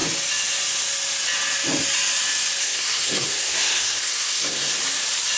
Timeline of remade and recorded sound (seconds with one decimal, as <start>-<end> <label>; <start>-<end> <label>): 0.0-2.6 recorded; 2.6-4.8 remade; 4.8-5.4 recorded